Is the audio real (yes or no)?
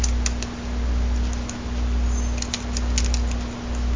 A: yes